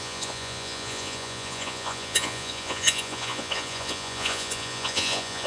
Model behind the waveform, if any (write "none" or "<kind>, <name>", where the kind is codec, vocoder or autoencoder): vocoder, Vocos